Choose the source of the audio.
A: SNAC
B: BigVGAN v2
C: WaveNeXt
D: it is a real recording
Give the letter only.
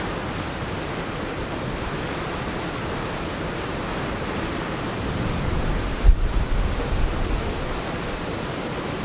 B